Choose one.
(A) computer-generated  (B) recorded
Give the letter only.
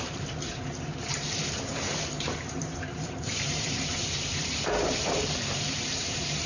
A